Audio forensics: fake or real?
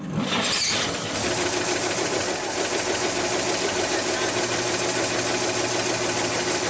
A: real